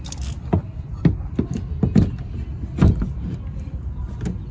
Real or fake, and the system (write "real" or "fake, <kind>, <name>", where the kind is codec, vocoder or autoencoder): real